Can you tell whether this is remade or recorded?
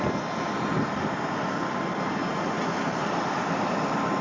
recorded